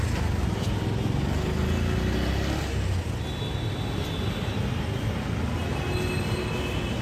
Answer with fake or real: real